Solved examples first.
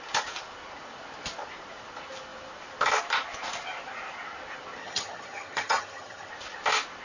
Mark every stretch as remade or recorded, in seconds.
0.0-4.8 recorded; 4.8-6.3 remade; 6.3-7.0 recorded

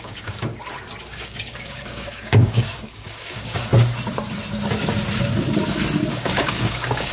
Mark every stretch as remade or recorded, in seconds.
0.0-0.5 remade; 0.5-1.0 recorded; 1.0-3.7 remade; 3.7-6.1 recorded; 6.1-7.1 remade

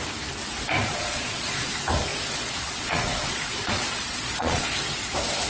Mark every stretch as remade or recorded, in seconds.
0.0-0.8 recorded; 0.8-1.7 remade; 1.7-2.1 recorded; 2.1-4.7 remade; 4.7-5.5 recorded

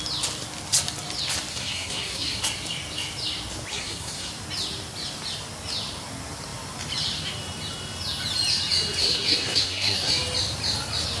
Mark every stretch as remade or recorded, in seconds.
0.0-1.5 recorded; 1.5-2.4 remade; 2.4-3.7 recorded; 3.7-4.3 remade; 4.3-9.0 recorded; 9.0-10.1 remade; 10.1-11.2 recorded

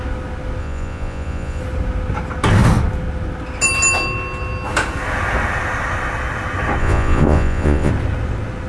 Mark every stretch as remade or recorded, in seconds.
0.0-0.6 recorded; 0.6-1.6 remade; 1.6-6.8 recorded; 6.8-7.9 remade; 7.9-8.7 recorded

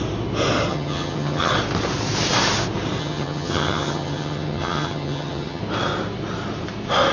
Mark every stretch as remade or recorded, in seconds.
0.0-0.7 recorded; 0.7-1.5 remade; 1.5-3.0 recorded; 3.0-5.6 remade; 5.6-7.1 recorded